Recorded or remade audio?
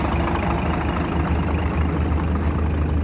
recorded